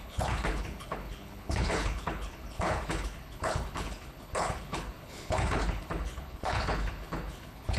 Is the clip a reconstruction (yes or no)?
yes